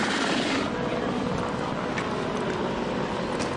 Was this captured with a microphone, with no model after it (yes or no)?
yes